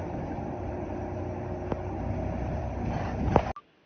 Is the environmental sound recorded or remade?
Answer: recorded